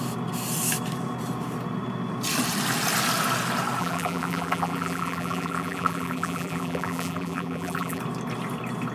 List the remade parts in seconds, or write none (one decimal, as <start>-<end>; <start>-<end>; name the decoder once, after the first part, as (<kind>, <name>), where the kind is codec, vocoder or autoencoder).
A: 3.8-8.0 (vocoder, BigVGAN v2)